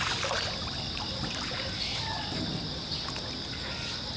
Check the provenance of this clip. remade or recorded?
recorded